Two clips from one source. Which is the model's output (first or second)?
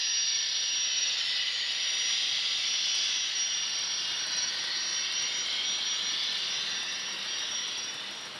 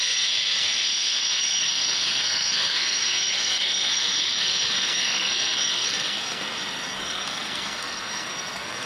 second